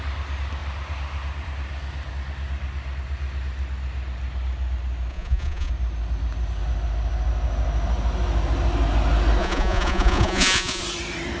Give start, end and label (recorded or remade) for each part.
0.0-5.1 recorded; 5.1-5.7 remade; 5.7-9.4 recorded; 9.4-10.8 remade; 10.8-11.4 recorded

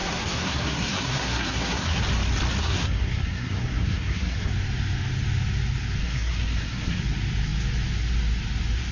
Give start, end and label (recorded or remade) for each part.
0.0-2.0 remade; 2.0-2.6 recorded; 2.6-4.5 remade; 4.5-6.0 recorded; 6.0-7.0 remade; 7.0-8.9 recorded

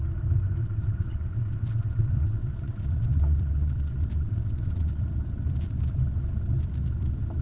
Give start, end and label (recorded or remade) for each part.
0.0-0.6 recorded; 0.6-5.0 remade; 5.0-7.4 recorded

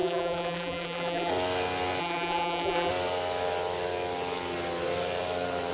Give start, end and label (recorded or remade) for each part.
0.0-1.3 remade; 1.3-2.0 recorded; 2.0-2.9 remade; 2.9-5.7 recorded

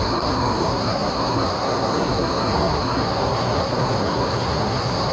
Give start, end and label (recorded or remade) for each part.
0.0-5.1 remade